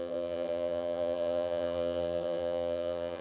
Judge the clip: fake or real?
fake